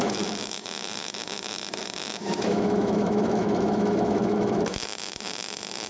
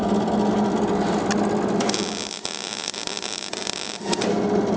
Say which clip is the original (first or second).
second